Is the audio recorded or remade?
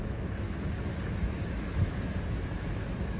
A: remade